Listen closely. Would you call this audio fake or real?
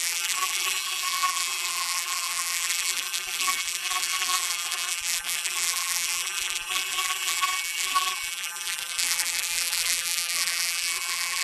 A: fake